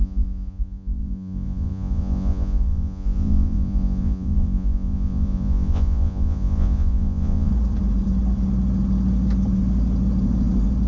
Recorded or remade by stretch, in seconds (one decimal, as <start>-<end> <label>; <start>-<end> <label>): 0.0-7.5 remade; 7.5-10.9 recorded